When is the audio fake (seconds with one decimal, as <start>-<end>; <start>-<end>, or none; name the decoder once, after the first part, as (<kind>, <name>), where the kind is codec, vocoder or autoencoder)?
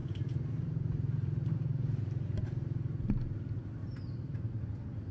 0.0-3.1 (vocoder, BigVGAN v2); 3.8-4.6